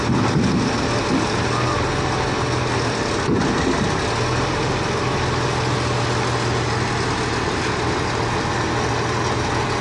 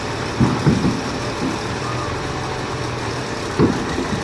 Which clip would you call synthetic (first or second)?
second